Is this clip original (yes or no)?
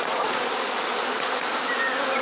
yes